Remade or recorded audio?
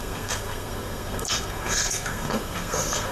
remade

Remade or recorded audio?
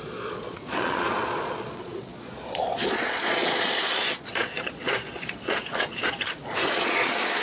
remade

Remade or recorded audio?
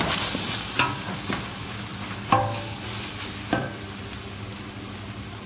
recorded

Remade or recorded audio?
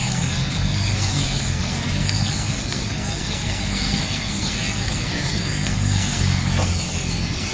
remade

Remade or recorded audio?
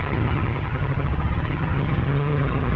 remade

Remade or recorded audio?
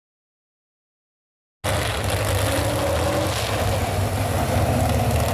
recorded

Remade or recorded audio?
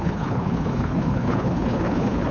remade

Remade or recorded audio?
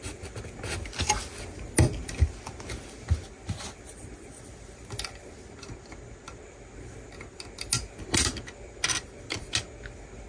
recorded